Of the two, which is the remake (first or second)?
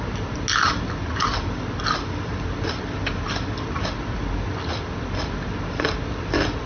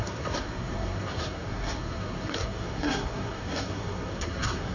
second